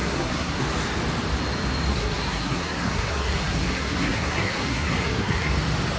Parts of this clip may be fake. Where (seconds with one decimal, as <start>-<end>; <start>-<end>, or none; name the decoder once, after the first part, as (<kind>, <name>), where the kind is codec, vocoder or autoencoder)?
0.0-0.6 (codec, SNAC); 1.9-5.5

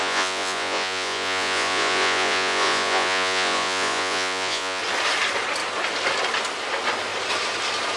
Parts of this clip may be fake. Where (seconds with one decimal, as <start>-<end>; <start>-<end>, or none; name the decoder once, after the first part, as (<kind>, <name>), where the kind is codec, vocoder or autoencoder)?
0.0-4.8 (vocoder, Vocos)

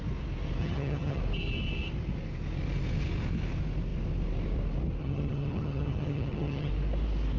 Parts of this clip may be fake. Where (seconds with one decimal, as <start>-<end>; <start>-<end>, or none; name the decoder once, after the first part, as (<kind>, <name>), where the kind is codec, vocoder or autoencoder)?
0.6-1.2 (vocoder, HiFi-GAN); 5.0-6.7

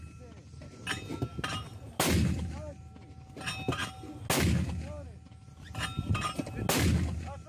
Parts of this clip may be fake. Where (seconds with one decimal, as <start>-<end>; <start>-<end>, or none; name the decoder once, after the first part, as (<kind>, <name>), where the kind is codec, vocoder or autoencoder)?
none